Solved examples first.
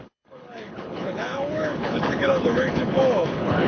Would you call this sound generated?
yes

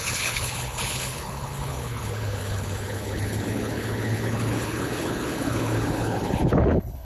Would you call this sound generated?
yes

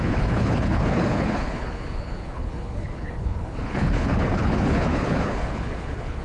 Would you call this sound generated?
yes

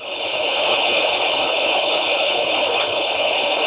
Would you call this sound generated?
yes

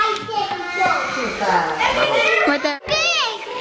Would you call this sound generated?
no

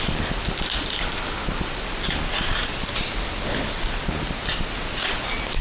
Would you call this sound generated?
no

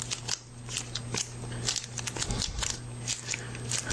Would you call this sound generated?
no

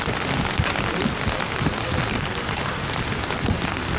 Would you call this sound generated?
no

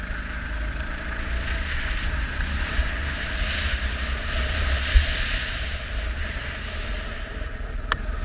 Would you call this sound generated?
no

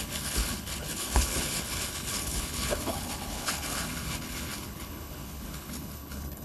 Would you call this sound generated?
yes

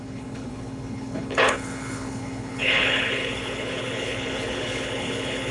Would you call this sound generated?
yes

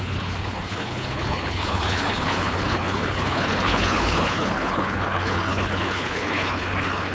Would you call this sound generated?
yes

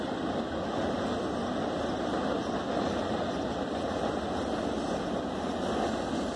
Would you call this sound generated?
no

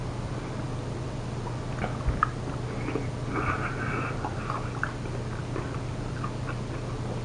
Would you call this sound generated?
no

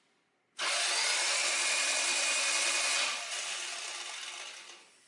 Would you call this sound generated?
no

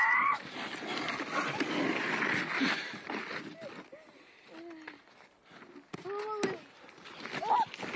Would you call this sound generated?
no